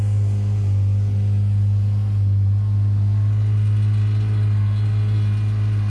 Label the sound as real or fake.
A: real